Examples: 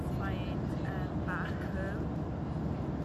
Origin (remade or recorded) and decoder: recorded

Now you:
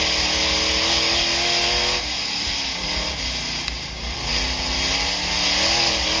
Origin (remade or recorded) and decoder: recorded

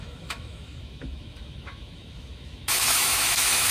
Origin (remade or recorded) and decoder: remade, autoencoder, DAC-VAE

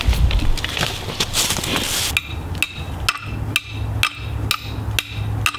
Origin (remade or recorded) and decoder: recorded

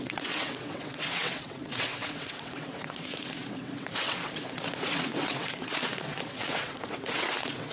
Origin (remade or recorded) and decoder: remade, vocoder, WaveNeXt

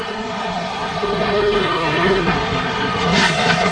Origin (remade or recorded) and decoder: remade, codec, SNAC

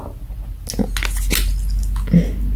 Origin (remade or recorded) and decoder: recorded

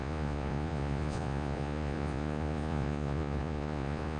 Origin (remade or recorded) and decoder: remade, vocoder, Vocos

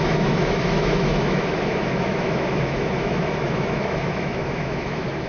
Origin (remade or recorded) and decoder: remade, autoencoder, DAC-VAE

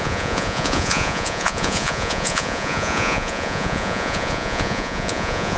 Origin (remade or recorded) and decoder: remade, vocoder, Vocos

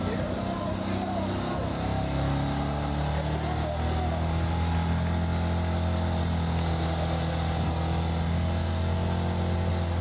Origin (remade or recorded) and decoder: recorded